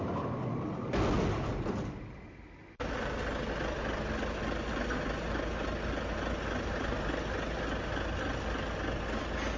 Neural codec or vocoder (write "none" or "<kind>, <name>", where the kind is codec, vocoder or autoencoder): none